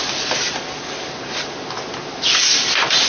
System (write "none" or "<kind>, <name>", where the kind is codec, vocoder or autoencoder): none